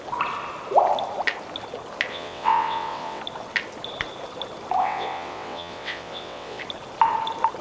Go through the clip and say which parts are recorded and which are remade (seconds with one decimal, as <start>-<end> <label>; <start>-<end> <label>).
0.0-2.1 recorded; 2.1-3.2 remade; 3.2-4.8 recorded; 4.8-6.6 remade; 6.6-7.6 recorded